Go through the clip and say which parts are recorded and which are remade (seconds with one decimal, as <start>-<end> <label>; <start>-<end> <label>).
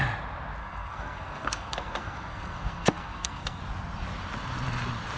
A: 0.0-0.6 recorded; 0.6-3.6 remade; 3.6-5.2 recorded